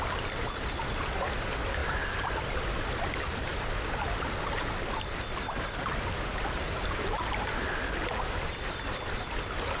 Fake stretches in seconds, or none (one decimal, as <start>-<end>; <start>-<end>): none

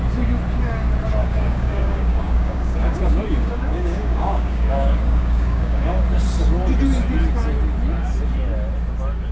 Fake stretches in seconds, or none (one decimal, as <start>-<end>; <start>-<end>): 1.2-6.0

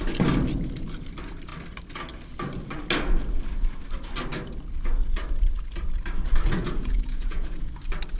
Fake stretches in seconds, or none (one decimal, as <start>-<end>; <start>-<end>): 6.6-7.7

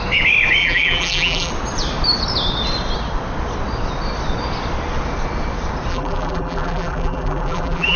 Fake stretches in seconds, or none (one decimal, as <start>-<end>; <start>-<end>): 0.6-1.5; 5.9-8.0

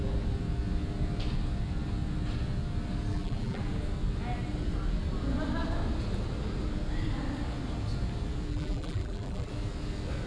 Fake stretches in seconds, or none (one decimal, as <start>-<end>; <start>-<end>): 3.1-3.6; 8.5-9.5

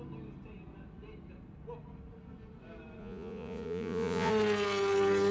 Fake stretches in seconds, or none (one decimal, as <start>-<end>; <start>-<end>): 3.0-4.3

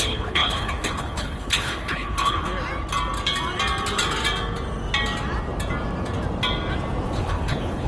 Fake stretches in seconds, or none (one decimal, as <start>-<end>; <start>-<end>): 0.0-2.5; 7.2-7.9